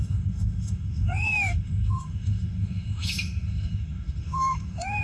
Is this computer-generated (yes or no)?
yes